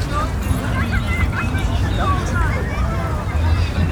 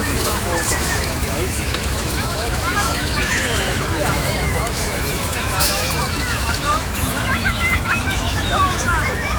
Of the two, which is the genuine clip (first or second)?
first